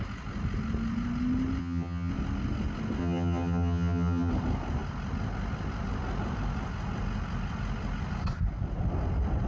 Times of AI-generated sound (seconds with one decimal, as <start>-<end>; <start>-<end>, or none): 1.6-2.1; 3.0-4.3